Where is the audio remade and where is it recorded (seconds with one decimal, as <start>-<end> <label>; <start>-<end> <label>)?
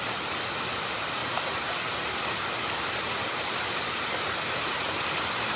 0.0-5.6 remade